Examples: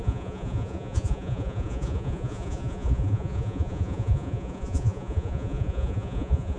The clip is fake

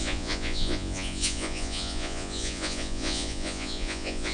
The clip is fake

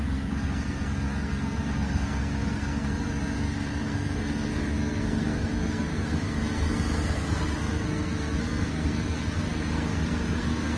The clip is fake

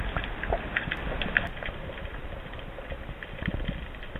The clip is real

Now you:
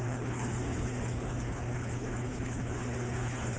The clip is fake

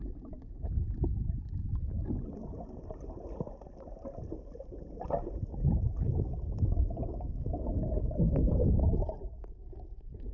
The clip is real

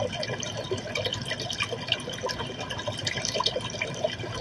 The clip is real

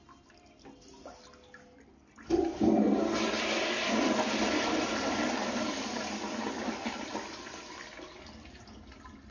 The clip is real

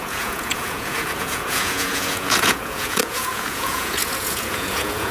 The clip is fake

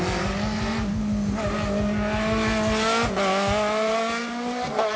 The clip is real